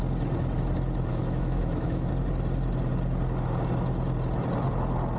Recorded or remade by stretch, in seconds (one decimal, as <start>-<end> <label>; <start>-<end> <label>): 0.0-1.1 recorded; 1.1-2.1 remade; 2.1-5.2 recorded